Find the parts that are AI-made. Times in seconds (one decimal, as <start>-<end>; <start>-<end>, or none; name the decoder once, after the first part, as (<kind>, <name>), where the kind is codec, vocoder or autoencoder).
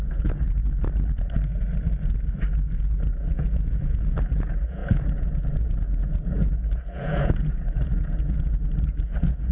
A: 0.0-0.6 (vocoder, Vocos); 3.0-9.5